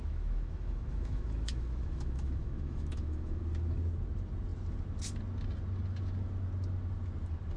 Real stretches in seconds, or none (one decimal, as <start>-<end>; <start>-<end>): 3.4-7.6